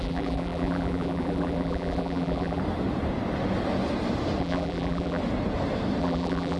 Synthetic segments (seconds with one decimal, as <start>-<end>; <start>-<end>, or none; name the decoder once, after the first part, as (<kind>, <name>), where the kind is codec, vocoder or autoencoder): 0.0-2.6 (vocoder, BigVGAN v2); 4.4-5.2; 6.0-6.6